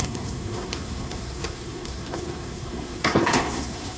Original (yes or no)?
no